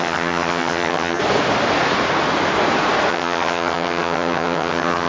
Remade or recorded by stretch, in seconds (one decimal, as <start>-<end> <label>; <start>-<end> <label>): 0.0-1.2 remade; 1.2-3.1 recorded; 3.1-5.1 remade

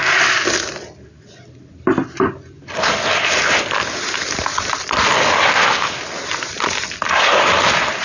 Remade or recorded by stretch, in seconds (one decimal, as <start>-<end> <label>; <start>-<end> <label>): 0.0-8.0 recorded